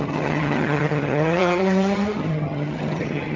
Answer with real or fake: fake